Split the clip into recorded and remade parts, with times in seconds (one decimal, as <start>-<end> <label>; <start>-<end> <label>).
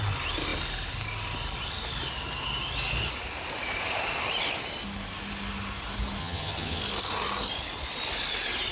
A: 0.0-6.2 recorded; 6.2-6.8 remade; 6.8-8.7 recorded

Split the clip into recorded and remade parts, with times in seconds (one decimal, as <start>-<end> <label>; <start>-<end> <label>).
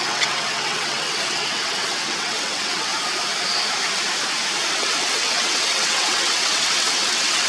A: 0.0-2.9 remade; 2.9-4.7 recorded; 4.7-7.5 remade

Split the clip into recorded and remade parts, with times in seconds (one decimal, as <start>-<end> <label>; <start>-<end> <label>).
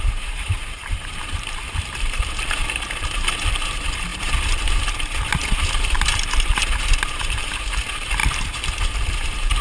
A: 0.0-9.6 remade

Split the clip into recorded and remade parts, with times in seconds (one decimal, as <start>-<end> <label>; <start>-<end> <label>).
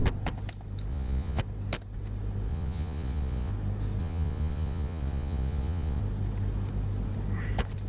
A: 0.0-0.9 recorded; 0.9-1.4 remade; 1.4-2.5 recorded; 2.5-3.5 remade; 3.5-4.0 recorded; 4.0-6.0 remade; 6.0-7.9 recorded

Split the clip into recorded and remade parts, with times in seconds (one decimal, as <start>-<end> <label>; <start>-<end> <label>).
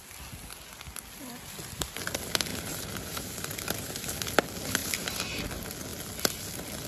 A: 0.0-2.5 recorded; 2.5-3.9 remade; 3.9-4.8 recorded; 4.8-5.4 remade; 5.4-6.9 recorded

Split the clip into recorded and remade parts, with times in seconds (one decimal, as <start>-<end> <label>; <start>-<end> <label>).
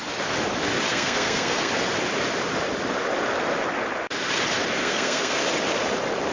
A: 0.0-0.9 recorded; 0.9-1.7 remade; 1.7-4.8 recorded; 4.8-5.4 remade; 5.4-6.3 recorded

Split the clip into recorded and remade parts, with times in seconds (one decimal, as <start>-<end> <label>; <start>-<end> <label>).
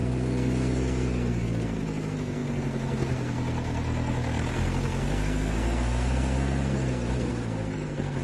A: 0.0-8.2 remade